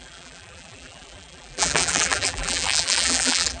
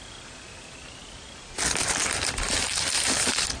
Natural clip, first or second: second